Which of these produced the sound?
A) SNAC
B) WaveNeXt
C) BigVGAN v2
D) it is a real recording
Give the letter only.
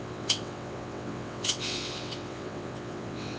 B